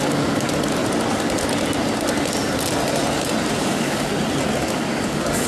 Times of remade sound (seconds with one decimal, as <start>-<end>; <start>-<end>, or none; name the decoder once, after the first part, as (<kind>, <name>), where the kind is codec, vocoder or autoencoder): 0.0-0.8 (codec, DAC); 3.6-4.1; 4.6-5.5